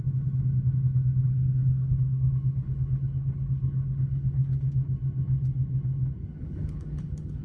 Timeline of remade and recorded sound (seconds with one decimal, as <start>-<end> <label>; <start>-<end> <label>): 0.0-1.2 recorded; 1.2-4.7 remade; 4.7-6.3 recorded; 6.3-7.4 remade

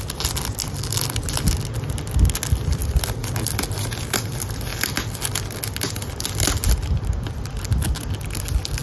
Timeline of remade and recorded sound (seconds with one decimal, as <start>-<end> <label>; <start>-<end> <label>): 0.0-8.8 recorded

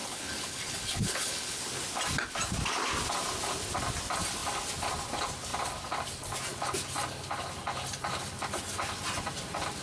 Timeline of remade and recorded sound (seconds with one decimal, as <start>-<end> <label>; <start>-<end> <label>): 0.0-1.6 remade; 1.6-9.8 recorded

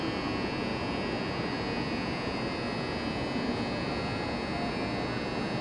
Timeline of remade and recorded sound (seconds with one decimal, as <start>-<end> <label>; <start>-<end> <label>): 0.0-5.6 recorded

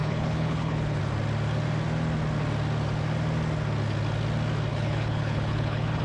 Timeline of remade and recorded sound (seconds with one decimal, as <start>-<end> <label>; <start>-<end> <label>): 0.0-1.0 remade; 1.0-4.7 recorded; 4.7-6.0 remade

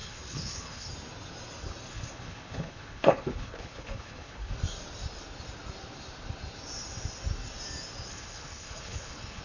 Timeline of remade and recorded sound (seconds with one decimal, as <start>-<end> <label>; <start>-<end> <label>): 0.0-0.9 remade; 0.9-1.9 recorded; 1.9-4.5 remade; 4.5-8.1 recorded; 8.1-9.4 remade

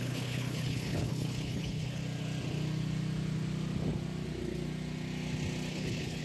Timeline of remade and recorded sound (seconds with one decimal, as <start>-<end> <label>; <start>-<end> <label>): 0.0-2.0 remade; 2.0-5.7 recorded; 5.7-6.2 remade